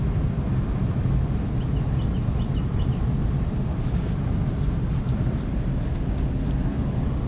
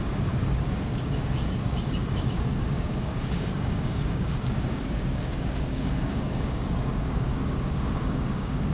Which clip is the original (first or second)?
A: first